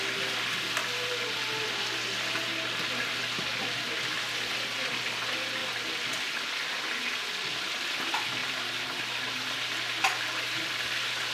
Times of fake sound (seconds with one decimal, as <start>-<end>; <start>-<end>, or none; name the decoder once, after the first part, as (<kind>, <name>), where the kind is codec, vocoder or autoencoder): 8.4-9.4 (vocoder, BigVGAN v2)